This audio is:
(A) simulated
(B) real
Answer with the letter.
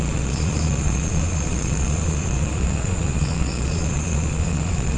A